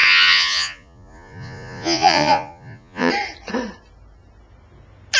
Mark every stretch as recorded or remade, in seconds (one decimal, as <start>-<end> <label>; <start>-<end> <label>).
0.0-3.1 remade; 3.1-5.2 recorded